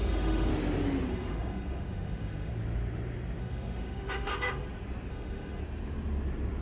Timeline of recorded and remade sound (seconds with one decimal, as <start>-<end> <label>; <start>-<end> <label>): 0.0-0.5 remade; 0.5-1.1 recorded; 1.1-2.5 remade; 2.5-3.4 recorded; 3.4-4.6 remade; 4.6-5.1 recorded; 5.1-5.6 remade; 5.6-6.6 recorded